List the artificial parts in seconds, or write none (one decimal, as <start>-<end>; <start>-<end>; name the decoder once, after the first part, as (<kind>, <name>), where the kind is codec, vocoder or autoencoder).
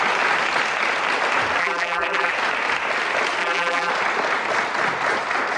1.6-2.3 (vocoder, BigVGAN v2); 3.4-3.9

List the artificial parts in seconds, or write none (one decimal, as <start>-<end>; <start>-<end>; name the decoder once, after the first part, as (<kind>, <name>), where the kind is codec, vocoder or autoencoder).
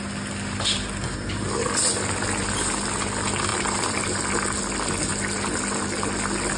3.5-4.6 (vocoder, BigVGAN v2)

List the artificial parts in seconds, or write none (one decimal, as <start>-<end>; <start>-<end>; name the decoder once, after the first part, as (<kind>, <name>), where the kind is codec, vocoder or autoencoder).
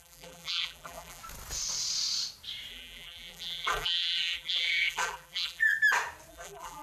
0.0-1.2 (vocoder, BigVGAN v2); 2.7-5.7; 6.3-6.8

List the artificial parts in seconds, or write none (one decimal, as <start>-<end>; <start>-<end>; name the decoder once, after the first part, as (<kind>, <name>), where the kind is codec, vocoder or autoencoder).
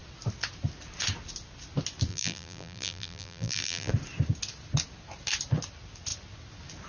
2.1-3.9 (vocoder, BigVGAN v2)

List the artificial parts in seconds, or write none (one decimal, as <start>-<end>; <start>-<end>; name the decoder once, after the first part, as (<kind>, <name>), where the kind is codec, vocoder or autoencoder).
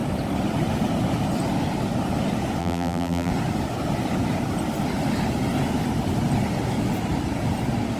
2.6-3.3 (vocoder, BigVGAN v2)